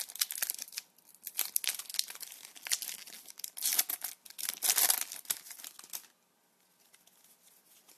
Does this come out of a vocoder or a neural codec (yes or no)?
no